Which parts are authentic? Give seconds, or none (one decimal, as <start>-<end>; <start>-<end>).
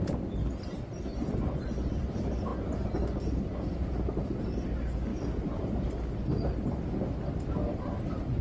0.0-8.4